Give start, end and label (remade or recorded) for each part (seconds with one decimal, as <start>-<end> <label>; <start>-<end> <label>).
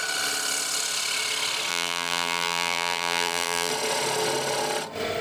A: 0.0-1.7 recorded; 1.7-3.7 remade; 3.7-5.2 recorded